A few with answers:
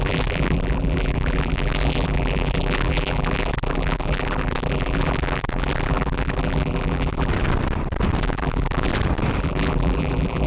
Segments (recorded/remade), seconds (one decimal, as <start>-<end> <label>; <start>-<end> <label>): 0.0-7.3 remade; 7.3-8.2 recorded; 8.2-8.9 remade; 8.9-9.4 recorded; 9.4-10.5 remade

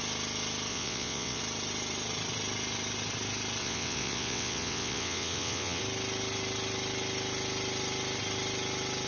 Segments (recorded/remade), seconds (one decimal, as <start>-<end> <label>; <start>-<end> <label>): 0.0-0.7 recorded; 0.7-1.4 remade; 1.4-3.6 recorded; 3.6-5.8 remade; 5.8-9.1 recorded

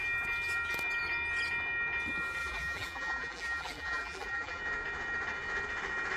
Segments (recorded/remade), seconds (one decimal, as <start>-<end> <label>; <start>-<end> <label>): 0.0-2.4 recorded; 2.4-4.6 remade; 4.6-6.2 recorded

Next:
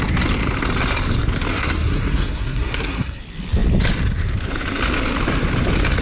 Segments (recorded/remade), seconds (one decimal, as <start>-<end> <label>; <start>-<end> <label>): 0.0-1.5 recorded; 1.5-3.2 remade; 3.2-6.0 recorded

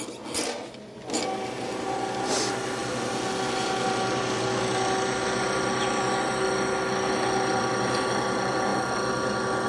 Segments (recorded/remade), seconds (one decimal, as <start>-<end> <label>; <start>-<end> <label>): 0.0-9.7 recorded

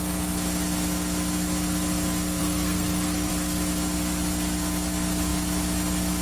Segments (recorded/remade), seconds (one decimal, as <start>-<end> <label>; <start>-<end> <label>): 0.0-2.4 recorded; 2.4-3.3 remade; 3.3-6.2 recorded

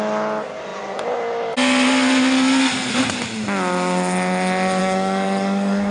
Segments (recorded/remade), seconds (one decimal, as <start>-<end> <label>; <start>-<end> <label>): 0.0-4.8 recorded; 4.8-5.9 remade

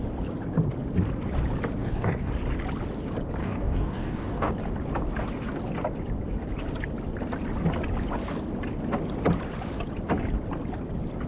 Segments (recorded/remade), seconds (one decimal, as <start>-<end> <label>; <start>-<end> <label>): 0.0-1.8 recorded; 1.8-2.3 remade; 2.3-3.4 recorded; 3.4-4.5 remade; 4.5-11.3 recorded